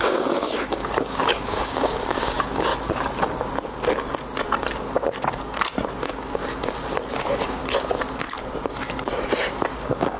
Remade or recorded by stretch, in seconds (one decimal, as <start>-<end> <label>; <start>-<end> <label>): 0.0-2.7 remade; 2.7-6.0 recorded; 6.0-6.4 remade; 6.4-7.1 recorded; 7.1-7.6 remade; 7.6-9.7 recorded; 9.7-10.2 remade